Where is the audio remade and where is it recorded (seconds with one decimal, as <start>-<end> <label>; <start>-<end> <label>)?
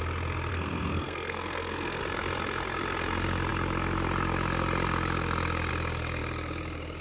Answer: 0.0-0.5 recorded; 0.5-2.0 remade; 2.0-7.0 recorded